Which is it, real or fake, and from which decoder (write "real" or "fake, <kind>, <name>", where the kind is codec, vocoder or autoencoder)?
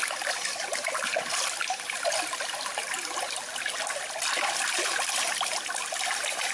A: real